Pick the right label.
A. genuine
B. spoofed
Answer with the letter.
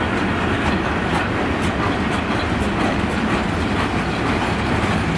A